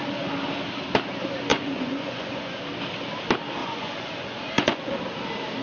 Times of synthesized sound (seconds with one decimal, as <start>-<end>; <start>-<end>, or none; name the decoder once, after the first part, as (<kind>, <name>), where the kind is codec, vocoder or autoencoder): 1.5-2.6 (vocoder, Vocos); 3.6-4.9